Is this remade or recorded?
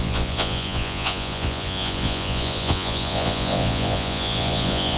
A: remade